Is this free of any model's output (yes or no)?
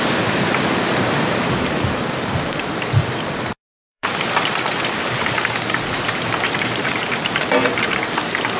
no